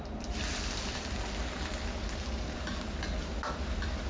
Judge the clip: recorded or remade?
recorded